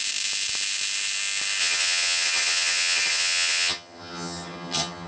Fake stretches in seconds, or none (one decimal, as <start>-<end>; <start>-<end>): 1.6-5.1